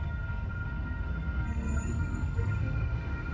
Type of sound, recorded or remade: remade